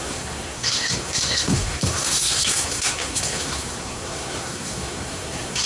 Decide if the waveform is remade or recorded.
remade